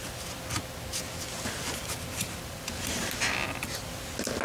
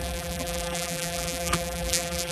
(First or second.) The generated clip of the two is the second